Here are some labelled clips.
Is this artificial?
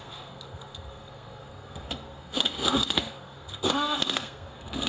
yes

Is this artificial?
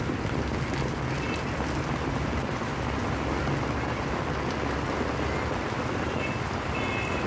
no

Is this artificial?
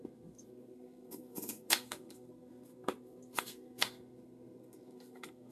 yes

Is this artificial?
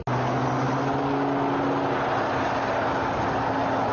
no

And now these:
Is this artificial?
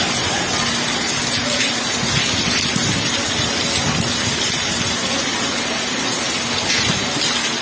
no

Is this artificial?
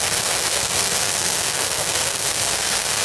yes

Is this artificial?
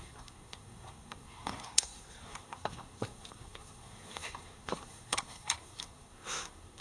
yes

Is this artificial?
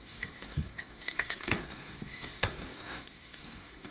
yes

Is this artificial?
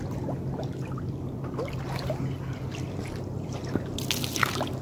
no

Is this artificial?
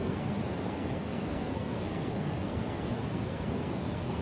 yes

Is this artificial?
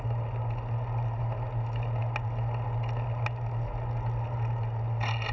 no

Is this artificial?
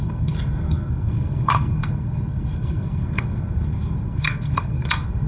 yes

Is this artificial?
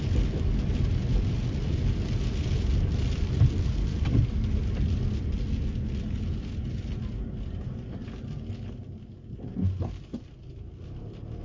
no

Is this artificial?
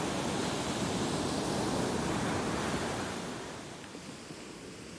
no